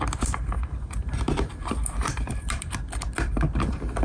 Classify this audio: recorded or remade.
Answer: remade